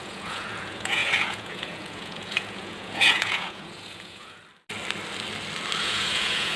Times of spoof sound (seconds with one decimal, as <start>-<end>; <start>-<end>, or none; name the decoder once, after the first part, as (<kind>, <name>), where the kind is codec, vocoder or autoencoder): 0.0-4.4 (vocoder, Vocos); 5.8-6.6